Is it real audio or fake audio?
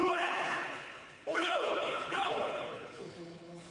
fake